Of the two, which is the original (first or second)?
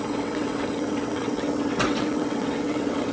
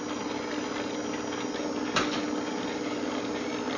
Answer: second